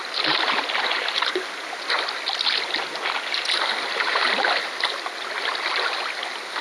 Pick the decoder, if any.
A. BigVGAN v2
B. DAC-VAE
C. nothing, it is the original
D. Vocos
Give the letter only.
C